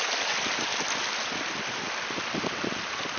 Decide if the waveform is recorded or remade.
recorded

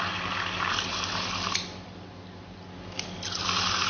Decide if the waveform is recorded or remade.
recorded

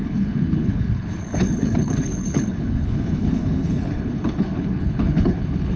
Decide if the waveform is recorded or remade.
remade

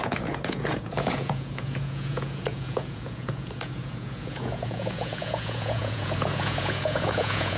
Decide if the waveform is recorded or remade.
remade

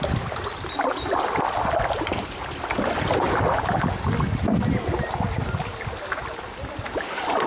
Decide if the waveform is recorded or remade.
recorded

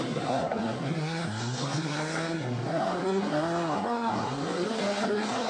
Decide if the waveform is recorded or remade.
remade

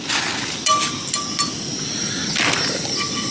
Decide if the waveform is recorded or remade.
recorded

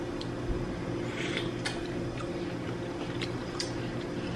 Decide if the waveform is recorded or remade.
remade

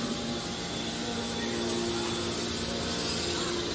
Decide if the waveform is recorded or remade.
recorded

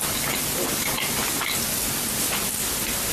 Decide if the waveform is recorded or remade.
recorded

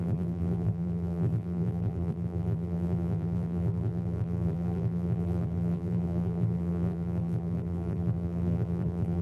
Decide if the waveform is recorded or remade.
remade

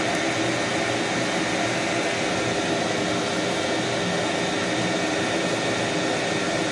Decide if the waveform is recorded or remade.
recorded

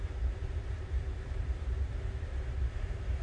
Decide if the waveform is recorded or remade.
remade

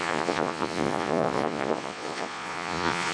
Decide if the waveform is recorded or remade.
remade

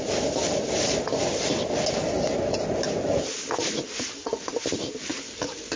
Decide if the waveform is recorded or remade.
recorded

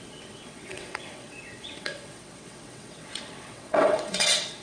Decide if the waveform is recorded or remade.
remade